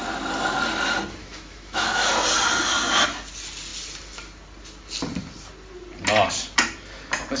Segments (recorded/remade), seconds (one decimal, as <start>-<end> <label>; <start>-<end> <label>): 0.0-1.2 recorded; 1.2-2.1 remade; 2.1-7.4 recorded